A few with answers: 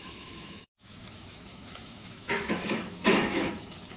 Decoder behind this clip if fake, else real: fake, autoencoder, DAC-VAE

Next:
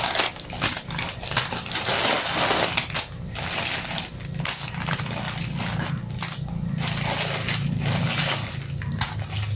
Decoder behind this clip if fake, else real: real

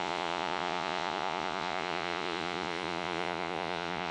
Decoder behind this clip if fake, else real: fake, vocoder, Vocos